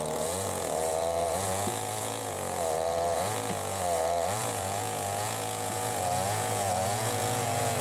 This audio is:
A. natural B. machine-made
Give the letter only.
B